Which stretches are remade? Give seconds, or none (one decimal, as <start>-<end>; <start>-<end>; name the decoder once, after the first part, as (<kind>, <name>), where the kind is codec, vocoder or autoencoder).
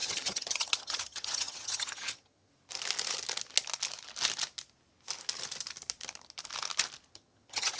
0.0-2.5 (vocoder, HiFi-GAN); 7.1-7.8